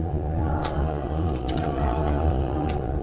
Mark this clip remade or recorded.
remade